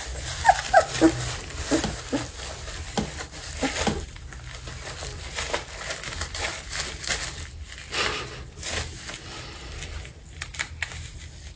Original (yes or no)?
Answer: yes